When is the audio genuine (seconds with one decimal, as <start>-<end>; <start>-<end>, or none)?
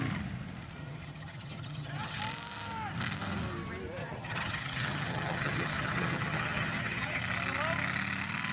0.0-0.8; 2.2-4.0; 7.2-8.5